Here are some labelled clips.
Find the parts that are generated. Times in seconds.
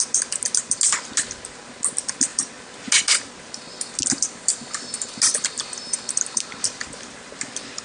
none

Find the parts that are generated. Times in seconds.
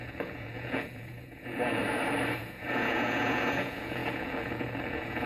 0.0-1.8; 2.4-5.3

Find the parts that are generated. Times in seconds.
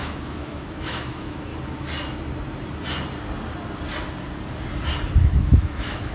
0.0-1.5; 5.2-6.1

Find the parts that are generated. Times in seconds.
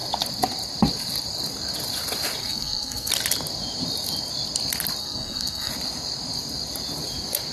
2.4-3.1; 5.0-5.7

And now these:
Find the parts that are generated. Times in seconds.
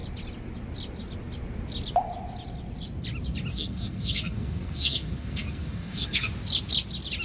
3.5-6.3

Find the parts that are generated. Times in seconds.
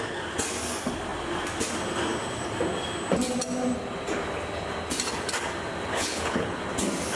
5.9-6.6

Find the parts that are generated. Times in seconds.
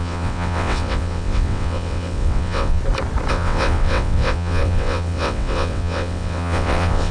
0.0-2.8; 3.3-7.1